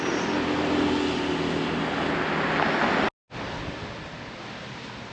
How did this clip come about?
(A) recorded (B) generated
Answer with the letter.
A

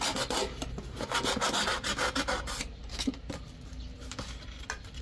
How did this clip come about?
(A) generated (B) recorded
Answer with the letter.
B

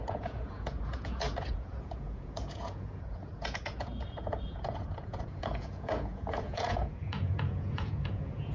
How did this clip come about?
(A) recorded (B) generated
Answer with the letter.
B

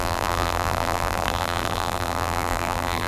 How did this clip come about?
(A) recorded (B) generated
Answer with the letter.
B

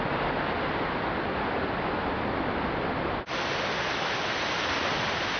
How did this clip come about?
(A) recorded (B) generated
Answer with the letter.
A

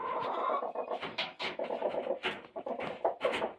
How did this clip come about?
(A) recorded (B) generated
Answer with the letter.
A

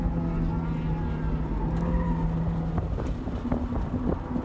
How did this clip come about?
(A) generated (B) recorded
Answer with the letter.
B